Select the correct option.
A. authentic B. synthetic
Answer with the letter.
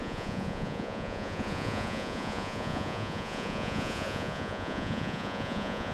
B